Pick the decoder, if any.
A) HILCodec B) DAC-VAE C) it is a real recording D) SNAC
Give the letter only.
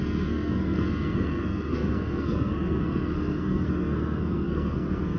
D